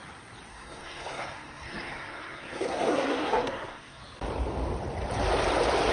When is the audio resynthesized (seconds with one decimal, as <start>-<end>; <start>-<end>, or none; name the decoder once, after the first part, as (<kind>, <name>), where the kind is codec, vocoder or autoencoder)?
0.5-4.0 (codec, SNAC)